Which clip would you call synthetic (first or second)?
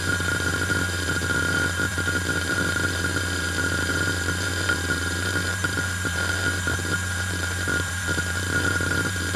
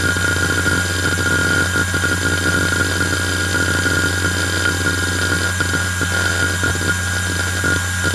first